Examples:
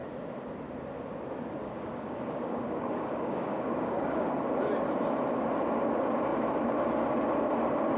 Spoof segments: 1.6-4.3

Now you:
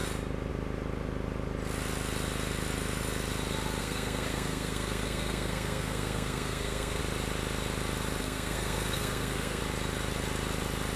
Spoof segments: 3.8-7.0; 8.2-9.6

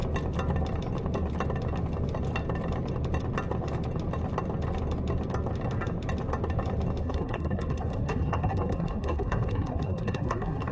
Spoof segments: 7.0-10.7

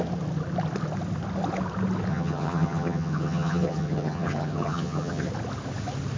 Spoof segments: 2.1-5.3

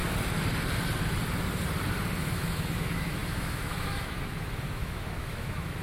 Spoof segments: 2.2-5.8

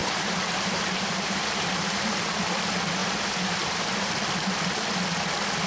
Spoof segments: 0.0-2.4; 3.0-4.1